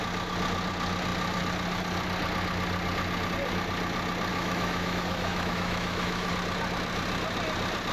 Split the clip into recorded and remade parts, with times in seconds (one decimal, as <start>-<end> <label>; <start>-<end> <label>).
0.0-4.3 recorded; 4.3-6.3 remade; 6.3-7.9 recorded